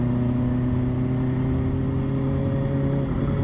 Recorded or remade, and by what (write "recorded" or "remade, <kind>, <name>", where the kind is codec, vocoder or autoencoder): recorded